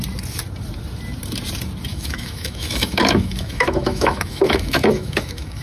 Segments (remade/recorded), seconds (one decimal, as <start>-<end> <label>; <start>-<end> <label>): 0.0-1.9 recorded; 1.9-5.6 remade